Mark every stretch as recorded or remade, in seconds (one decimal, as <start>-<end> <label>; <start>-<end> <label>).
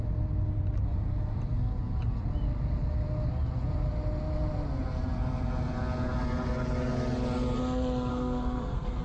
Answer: 0.0-8.1 recorded; 8.1-9.0 remade